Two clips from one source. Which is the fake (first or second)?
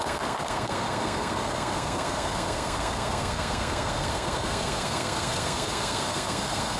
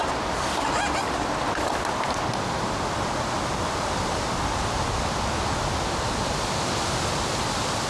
first